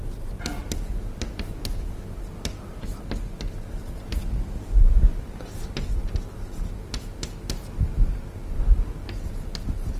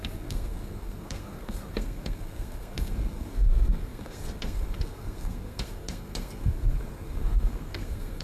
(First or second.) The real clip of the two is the first